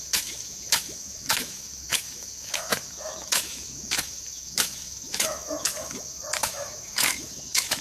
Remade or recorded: remade